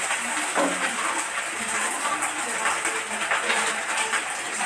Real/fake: real